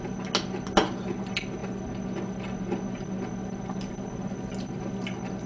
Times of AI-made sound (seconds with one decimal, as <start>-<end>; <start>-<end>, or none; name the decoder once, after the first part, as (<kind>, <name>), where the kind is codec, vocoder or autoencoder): none